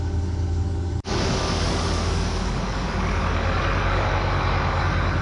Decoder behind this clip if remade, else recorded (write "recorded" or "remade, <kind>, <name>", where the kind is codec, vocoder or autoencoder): remade, codec, DAC